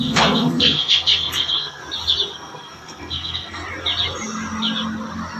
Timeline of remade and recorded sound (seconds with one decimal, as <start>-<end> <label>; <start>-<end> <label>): 0.0-1.8 remade; 1.8-2.3 recorded; 2.3-3.6 remade; 3.6-5.4 recorded